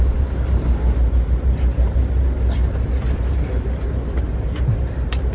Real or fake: real